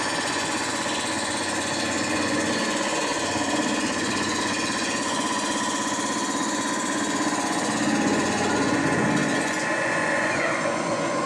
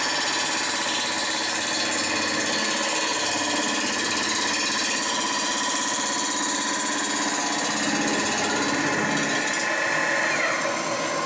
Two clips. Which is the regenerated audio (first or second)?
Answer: first